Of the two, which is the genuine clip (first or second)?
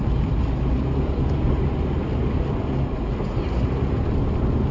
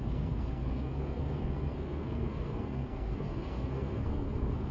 first